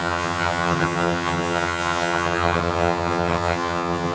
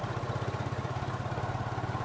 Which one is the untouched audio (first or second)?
second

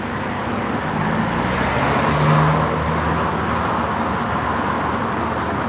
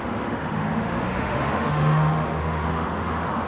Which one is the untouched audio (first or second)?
first